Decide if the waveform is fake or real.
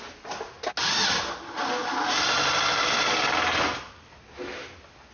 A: real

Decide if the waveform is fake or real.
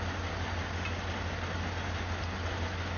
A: real